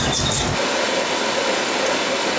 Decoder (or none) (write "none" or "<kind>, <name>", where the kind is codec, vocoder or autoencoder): none